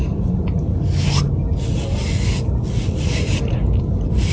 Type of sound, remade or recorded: recorded